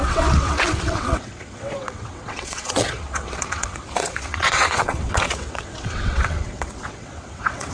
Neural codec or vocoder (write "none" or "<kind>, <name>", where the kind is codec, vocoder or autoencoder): vocoder, WaveNeXt